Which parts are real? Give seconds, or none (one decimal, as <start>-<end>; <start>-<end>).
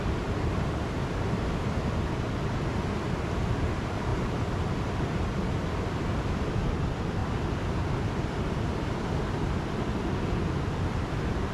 none